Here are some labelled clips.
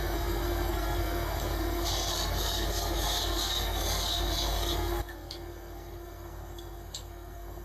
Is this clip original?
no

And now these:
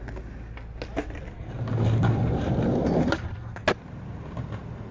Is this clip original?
yes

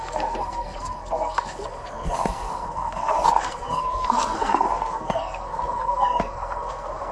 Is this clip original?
no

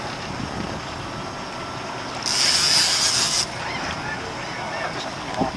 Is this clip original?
yes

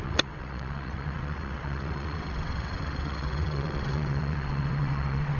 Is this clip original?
no